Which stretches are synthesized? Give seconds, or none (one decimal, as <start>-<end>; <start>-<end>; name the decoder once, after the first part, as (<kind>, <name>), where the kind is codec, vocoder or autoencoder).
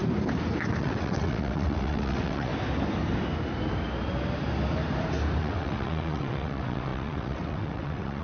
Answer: 0.8-2.5 (vocoder, WaveNeXt); 5.4-8.2